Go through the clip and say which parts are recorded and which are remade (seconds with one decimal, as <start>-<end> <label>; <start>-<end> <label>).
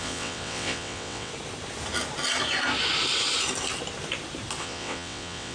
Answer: 0.0-1.3 remade; 1.3-4.6 recorded; 4.6-5.5 remade